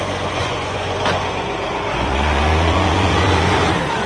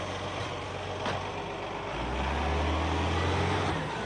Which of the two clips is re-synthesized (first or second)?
first